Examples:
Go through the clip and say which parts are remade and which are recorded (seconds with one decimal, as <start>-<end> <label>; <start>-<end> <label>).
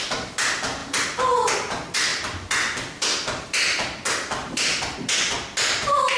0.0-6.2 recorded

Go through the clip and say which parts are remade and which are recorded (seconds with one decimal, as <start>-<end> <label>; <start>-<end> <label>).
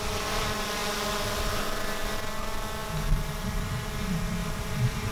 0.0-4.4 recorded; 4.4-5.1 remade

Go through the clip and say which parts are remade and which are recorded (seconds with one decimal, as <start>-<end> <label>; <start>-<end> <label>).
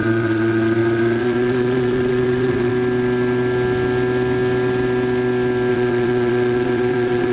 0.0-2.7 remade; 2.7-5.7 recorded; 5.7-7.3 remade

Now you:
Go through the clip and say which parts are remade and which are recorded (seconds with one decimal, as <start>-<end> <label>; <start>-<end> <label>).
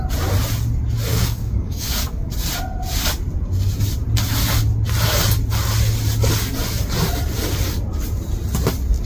0.0-1.1 recorded; 1.1-2.3 remade; 2.3-9.1 recorded